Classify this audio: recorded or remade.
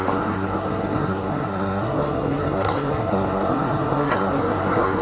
remade